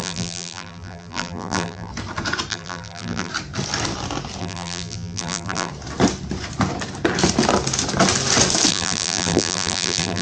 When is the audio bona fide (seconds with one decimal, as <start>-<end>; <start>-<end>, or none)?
1.9-2.5; 3.3-4.4; 5.7-8.7